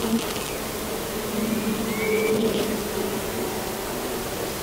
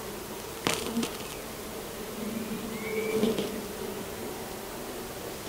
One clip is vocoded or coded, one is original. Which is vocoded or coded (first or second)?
second